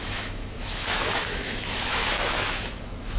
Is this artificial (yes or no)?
yes